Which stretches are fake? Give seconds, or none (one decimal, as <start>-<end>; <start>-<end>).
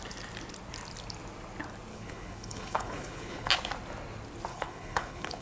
1.9-3.5; 4.5-5.4